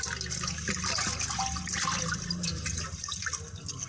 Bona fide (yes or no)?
yes